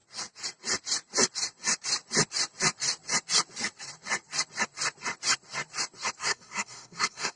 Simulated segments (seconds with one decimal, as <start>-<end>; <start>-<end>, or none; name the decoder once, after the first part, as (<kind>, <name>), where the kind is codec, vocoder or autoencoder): 6.2-7.4 (codec, SNAC)